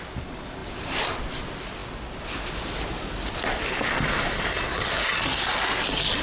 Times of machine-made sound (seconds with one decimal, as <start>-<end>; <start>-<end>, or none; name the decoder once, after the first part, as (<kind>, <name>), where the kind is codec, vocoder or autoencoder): 0.6-1.4 (vocoder, BigVGAN v2)